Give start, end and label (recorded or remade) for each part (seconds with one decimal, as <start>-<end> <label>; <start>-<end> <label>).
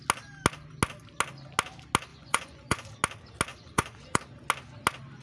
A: 0.0-2.1 recorded; 2.1-2.9 remade; 2.9-3.5 recorded; 3.5-4.2 remade; 4.2-5.2 recorded